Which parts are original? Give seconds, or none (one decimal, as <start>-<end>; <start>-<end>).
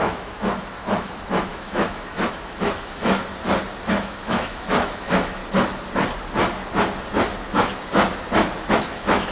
3.2-3.9; 5.4-8.7